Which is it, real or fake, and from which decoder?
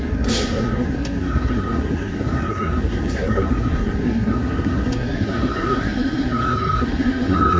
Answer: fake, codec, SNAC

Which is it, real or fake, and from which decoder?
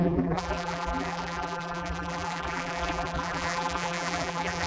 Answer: fake, vocoder, BigVGAN v2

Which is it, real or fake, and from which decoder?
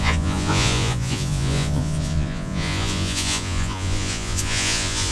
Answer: fake, vocoder, Vocos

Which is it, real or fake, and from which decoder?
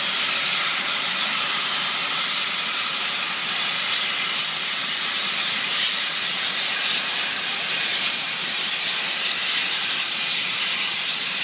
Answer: real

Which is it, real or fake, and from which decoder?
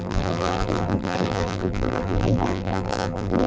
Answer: fake, vocoder, BigVGAN v2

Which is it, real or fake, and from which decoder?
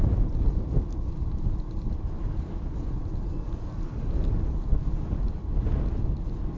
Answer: real